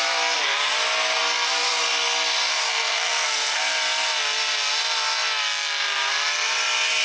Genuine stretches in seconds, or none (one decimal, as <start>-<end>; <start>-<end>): 0.0-2.5; 3.6-7.0